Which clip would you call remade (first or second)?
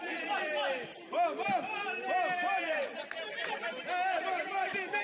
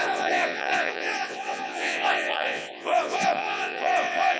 second